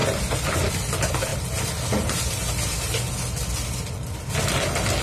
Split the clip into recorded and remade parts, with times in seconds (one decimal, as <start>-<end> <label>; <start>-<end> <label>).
0.0-5.0 recorded